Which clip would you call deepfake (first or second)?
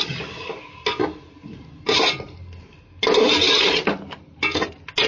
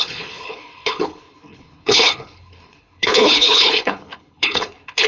second